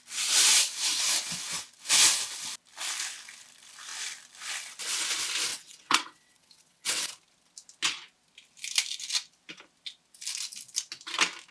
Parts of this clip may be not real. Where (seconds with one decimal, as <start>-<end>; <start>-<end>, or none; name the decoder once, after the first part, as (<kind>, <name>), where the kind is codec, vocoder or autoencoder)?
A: 5.5-7.1 (vocoder, WaveNeXt)